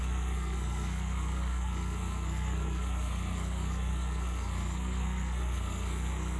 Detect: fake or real fake